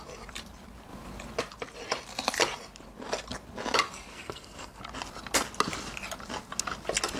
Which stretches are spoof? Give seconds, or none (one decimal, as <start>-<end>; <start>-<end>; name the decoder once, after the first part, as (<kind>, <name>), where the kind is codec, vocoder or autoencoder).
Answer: 4.1-4.8 (codec, SNAC)